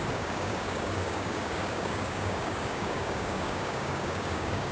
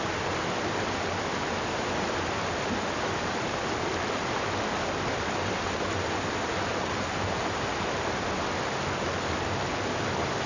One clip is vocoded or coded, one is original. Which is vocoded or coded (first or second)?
first